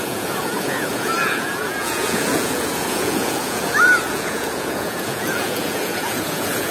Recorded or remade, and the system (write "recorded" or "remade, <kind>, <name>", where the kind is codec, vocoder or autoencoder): remade, vocoder, Vocos